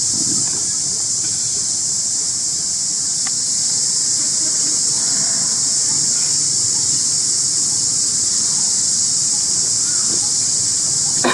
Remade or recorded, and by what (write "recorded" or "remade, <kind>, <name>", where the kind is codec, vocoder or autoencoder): recorded